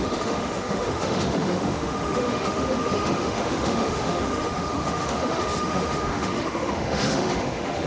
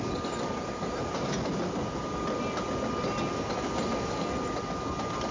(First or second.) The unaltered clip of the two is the second